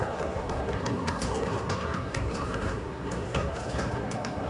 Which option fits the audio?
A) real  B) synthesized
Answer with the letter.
B